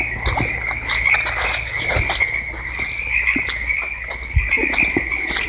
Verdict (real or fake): real